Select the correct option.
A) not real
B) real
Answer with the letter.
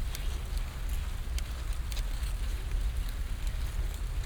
B